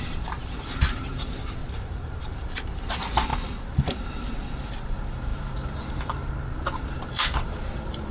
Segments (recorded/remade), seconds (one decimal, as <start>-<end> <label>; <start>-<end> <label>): 0.0-8.1 remade